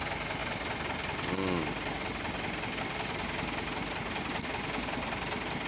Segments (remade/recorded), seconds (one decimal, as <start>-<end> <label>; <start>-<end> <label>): 0.0-5.7 recorded